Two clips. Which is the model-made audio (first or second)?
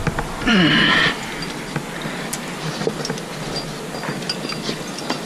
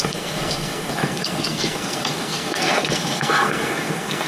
second